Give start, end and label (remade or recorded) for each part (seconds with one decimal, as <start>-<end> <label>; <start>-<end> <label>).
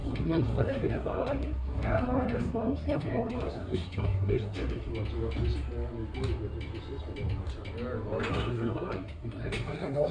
0.0-4.9 remade; 4.9-8.3 recorded; 8.3-10.1 remade